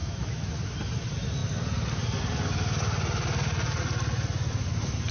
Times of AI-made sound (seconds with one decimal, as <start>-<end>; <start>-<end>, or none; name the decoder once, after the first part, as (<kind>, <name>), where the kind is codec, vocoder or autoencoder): 0.0-0.5 (autoencoder, DAC-VAE)